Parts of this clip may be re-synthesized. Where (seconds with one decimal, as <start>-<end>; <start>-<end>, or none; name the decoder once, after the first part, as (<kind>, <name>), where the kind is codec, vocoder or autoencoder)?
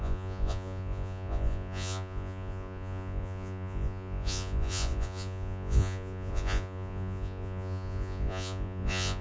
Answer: 0.0-9.2 (vocoder, Vocos)